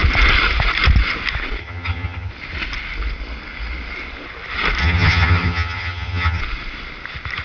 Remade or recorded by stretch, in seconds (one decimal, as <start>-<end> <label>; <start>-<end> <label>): 0.0-1.6 recorded; 1.6-2.3 remade; 2.3-4.8 recorded; 4.8-6.4 remade; 6.4-7.4 recorded